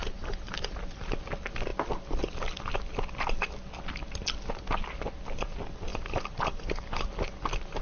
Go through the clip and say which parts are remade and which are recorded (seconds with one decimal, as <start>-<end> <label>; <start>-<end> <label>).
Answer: 0.0-1.0 remade; 1.0-5.9 recorded; 5.9-7.1 remade; 7.1-7.8 recorded